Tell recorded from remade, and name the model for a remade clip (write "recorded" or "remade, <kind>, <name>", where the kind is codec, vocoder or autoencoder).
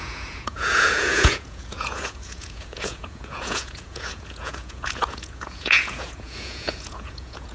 remade, vocoder, Vocos